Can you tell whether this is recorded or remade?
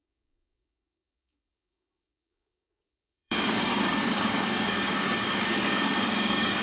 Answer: remade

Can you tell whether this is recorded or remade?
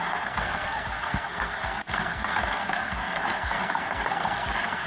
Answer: remade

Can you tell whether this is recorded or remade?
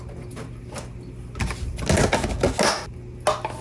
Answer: recorded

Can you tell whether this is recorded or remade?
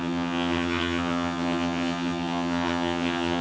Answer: remade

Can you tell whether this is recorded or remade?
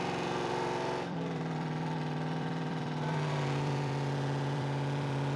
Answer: remade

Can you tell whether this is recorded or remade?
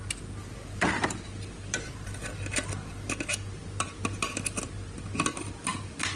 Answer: recorded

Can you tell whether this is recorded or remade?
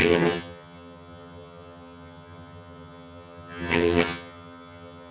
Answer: remade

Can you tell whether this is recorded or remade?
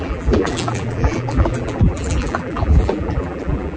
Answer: remade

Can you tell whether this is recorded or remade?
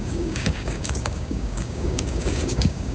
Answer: remade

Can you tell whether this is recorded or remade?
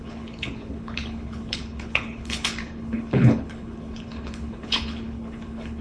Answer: remade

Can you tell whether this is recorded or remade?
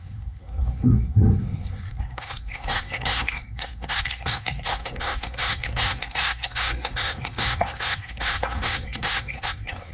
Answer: remade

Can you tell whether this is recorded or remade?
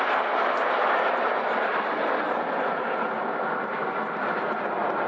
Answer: recorded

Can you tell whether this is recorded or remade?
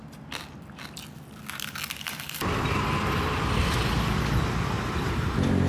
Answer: recorded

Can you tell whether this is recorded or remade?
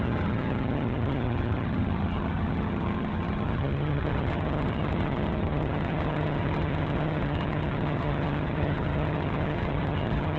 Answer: remade